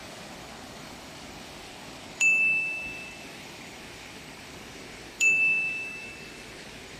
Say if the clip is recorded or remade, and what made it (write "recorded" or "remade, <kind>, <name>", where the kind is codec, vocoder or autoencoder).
remade, codec, DAC